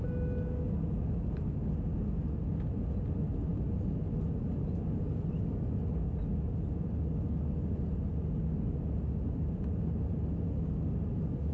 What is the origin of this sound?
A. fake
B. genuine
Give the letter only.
B